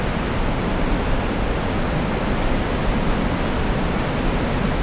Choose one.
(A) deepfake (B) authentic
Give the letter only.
B